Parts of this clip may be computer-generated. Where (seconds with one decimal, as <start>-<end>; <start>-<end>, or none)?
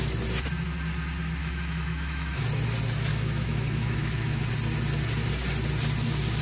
1.4-2.4; 3.1-4.4